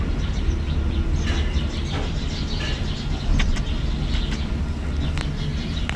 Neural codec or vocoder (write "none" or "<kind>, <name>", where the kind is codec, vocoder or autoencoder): none